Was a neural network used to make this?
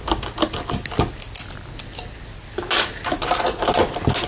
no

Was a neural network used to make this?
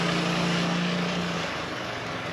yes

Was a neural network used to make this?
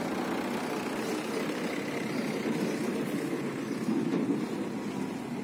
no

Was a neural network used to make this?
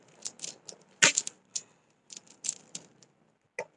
no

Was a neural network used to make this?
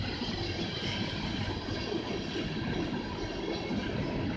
no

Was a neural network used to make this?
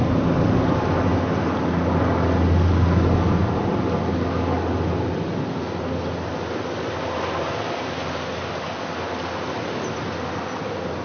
no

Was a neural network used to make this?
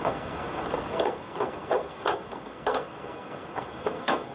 yes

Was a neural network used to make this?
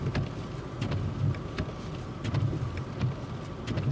no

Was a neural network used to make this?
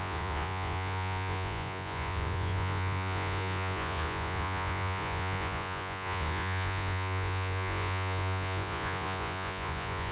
yes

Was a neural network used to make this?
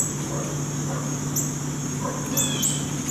no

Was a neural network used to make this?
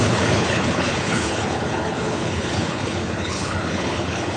yes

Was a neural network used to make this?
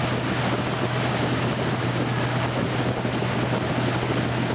no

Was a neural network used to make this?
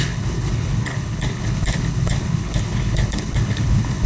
yes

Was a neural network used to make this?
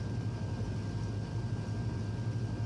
no